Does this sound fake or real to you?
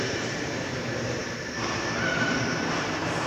fake